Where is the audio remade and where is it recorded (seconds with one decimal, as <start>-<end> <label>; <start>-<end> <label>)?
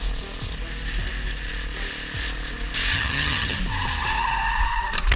0.0-2.9 recorded; 2.9-3.6 remade; 3.6-5.2 recorded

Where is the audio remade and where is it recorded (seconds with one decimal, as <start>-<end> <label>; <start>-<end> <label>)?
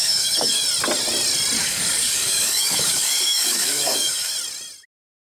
0.0-0.6 remade; 0.6-1.6 recorded; 1.6-4.3 remade; 4.3-5.4 recorded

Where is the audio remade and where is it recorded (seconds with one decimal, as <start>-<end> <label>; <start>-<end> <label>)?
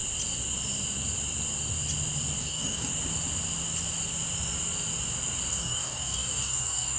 0.0-2.4 recorded; 2.4-2.9 remade; 2.9-5.5 recorded; 5.5-7.0 remade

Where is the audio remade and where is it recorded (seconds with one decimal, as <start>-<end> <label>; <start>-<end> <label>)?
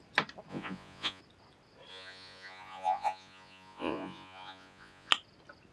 0.0-0.5 recorded; 0.5-1.2 remade; 1.2-1.9 recorded; 1.9-5.1 remade; 5.1-5.7 recorded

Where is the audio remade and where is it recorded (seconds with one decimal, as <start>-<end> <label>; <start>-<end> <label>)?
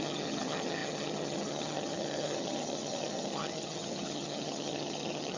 0.0-5.4 remade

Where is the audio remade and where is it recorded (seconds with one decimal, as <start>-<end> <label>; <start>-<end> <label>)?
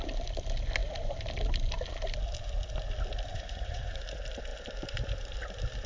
0.0-3.3 recorded; 3.3-4.0 remade; 4.0-5.9 recorded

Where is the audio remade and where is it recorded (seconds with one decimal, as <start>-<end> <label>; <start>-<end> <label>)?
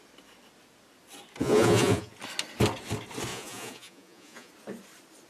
0.0-1.4 recorded; 1.4-2.1 remade; 2.1-3.3 recorded; 3.3-4.5 remade; 4.5-5.3 recorded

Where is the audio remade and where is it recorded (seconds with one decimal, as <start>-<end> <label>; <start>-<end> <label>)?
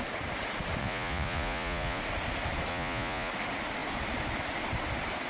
0.0-0.8 recorded; 0.8-2.0 remade; 2.0-2.7 recorded; 2.7-3.3 remade; 3.3-5.3 recorded